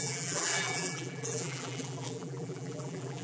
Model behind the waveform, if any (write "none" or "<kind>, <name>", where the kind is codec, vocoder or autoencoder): vocoder, BigVGAN v2